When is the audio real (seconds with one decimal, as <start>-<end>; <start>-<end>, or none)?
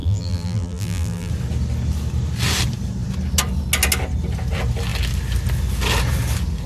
1.3-6.7